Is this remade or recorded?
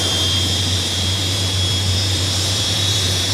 remade